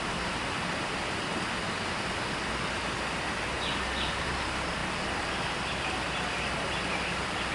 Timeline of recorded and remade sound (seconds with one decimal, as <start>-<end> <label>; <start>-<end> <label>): 0.0-7.5 recorded